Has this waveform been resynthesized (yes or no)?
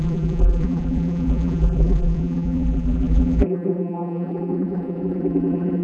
yes